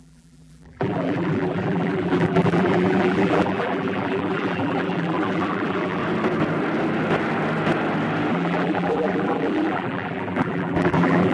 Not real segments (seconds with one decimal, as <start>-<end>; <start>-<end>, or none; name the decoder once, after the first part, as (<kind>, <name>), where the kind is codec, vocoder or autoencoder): 0.0-6.0 (vocoder, BigVGAN v2); 8.3-11.3